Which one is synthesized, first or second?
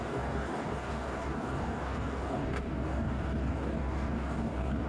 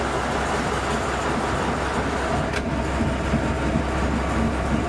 first